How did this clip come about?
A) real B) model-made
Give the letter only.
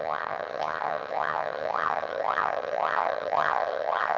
B